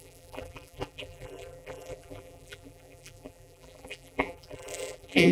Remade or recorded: remade